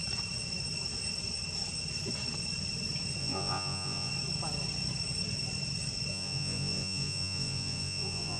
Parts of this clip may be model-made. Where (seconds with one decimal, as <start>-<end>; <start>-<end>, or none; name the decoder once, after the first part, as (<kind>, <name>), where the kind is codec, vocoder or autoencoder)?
3.2-4.1 (vocoder, Vocos); 6.1-8.4